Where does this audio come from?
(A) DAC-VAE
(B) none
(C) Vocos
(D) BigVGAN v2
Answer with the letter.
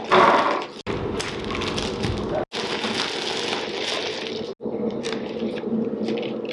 B